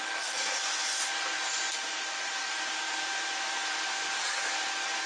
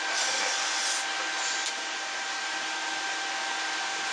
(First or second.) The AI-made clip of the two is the first